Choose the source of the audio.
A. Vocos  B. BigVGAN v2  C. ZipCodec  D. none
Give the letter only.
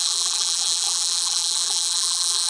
B